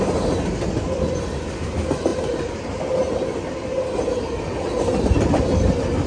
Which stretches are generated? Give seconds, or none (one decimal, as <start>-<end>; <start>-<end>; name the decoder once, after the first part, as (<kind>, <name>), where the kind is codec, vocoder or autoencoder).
none